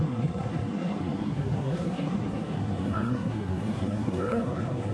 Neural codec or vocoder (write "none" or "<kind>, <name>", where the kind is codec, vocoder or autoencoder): codec, SNAC